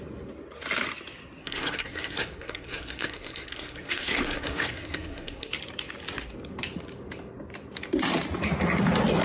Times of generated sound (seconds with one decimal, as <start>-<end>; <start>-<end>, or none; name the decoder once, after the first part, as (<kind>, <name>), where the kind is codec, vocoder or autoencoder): 1.4-5.5 (codec, SNAC)